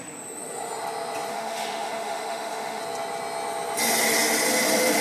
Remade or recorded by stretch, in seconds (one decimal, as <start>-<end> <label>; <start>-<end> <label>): 0.0-1.3 recorded; 1.3-2.8 remade; 2.8-5.0 recorded